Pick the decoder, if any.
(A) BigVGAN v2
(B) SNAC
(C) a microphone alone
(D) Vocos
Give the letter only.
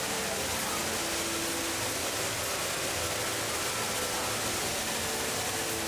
C